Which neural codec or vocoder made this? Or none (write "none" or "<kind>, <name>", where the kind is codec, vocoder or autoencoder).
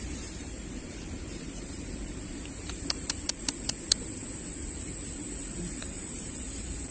vocoder, BigVGAN v2